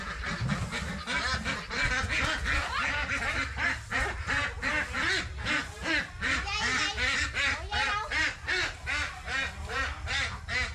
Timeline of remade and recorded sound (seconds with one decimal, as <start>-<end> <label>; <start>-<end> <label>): 0.0-10.7 recorded